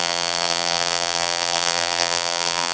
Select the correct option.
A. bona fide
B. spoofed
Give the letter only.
B